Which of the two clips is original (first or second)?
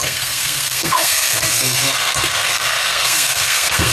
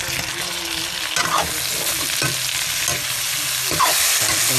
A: second